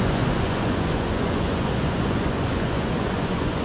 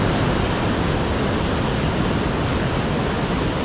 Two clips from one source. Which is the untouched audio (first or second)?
second